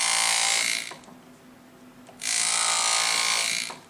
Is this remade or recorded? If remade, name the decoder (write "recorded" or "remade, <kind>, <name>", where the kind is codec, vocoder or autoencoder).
recorded